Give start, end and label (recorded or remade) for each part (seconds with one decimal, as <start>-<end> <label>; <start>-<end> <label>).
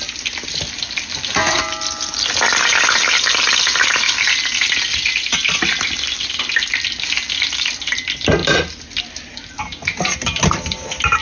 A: 0.0-11.2 recorded